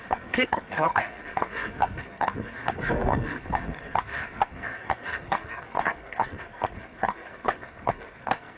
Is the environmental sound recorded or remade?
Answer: remade